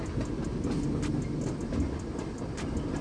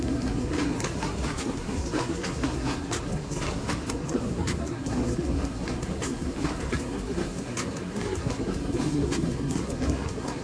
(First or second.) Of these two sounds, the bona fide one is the first